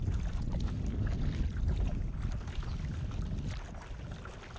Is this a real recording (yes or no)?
yes